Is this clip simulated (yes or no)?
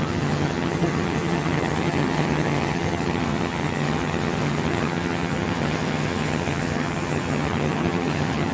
yes